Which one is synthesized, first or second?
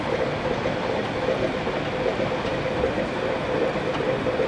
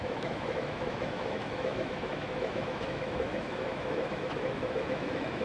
second